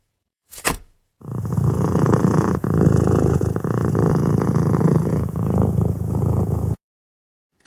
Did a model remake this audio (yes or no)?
yes